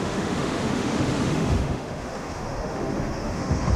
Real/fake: fake